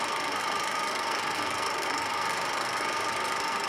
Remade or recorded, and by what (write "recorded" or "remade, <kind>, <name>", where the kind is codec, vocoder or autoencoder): remade, codec, SNAC